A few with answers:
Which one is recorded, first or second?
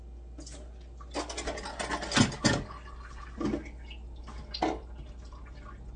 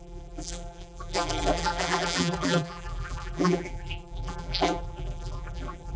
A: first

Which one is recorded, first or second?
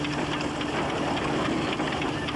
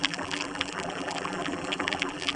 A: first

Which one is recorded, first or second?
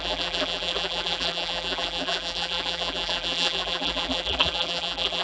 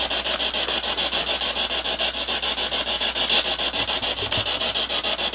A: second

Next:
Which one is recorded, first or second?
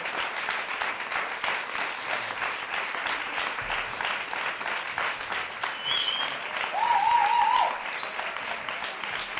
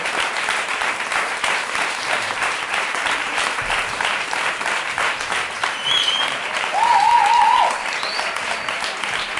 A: first